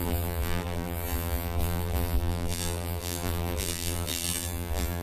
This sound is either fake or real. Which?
fake